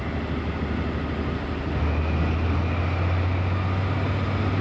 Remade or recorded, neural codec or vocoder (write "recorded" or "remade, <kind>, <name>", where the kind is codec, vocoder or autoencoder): recorded